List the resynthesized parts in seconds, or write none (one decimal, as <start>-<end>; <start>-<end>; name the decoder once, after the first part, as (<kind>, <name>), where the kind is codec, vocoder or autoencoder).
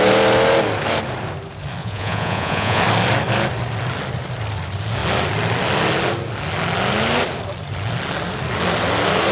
1.8-2.8 (vocoder, Vocos)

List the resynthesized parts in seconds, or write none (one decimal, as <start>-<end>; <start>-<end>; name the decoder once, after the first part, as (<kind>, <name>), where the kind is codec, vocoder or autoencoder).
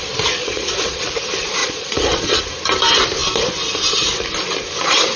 0.4-1.0 (vocoder, Vocos); 1.6-2.4